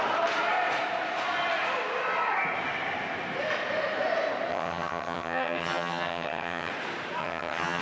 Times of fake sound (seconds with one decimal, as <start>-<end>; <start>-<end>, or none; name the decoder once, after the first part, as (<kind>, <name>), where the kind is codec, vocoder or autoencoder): 4.5-6.7 (vocoder, HiFi-GAN); 7.2-7.8